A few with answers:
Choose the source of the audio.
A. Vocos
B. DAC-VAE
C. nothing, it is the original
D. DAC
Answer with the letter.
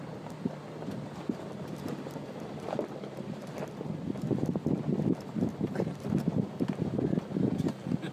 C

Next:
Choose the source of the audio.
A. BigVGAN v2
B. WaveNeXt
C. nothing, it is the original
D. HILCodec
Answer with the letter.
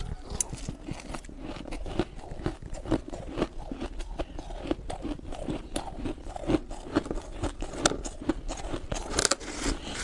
C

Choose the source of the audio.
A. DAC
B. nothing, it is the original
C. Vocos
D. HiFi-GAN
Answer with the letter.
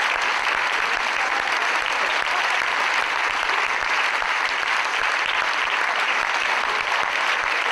B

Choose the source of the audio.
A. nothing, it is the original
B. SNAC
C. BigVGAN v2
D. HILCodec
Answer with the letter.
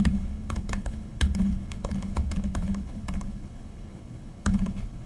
D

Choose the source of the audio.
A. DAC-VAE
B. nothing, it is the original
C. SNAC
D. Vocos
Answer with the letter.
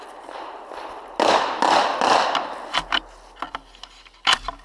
B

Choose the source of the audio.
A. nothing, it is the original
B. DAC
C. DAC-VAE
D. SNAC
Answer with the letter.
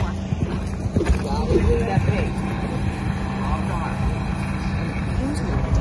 A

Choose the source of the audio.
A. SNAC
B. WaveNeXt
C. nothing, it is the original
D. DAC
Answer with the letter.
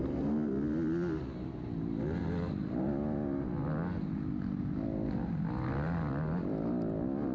C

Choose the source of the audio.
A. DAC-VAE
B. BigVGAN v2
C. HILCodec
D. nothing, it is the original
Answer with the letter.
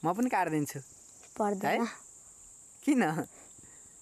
D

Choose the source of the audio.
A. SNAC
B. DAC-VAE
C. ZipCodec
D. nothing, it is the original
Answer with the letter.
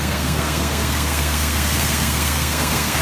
A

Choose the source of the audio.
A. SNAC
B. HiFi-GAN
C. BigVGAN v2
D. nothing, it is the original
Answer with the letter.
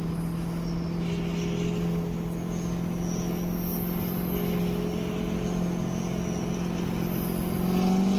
D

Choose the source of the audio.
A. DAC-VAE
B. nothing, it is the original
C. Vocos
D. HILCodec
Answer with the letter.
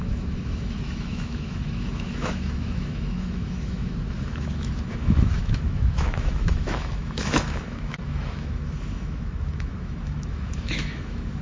A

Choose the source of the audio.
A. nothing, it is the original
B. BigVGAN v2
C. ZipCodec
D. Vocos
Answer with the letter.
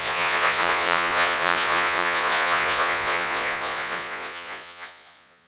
D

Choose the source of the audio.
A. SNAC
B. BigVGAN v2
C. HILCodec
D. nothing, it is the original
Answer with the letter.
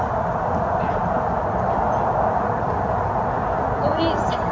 D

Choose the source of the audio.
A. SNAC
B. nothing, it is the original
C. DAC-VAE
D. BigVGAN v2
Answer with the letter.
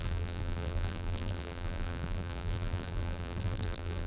D